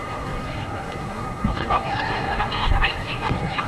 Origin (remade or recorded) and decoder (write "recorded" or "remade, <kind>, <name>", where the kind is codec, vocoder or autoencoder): remade, codec, SNAC